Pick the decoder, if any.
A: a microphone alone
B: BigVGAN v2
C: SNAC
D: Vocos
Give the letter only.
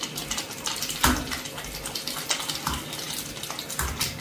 A